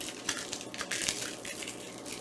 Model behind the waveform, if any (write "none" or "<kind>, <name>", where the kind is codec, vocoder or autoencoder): none